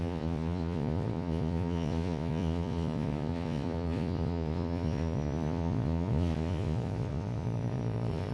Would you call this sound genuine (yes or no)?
no